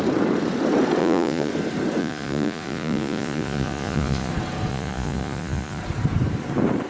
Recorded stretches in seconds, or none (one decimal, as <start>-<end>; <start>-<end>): 0.0-1.0; 1.5-2.0; 4.3-4.7; 5.8-6.9